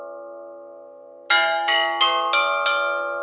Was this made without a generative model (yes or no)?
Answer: yes